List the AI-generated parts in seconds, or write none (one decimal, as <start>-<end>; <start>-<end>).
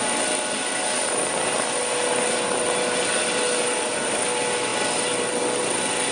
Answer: 4.7-5.4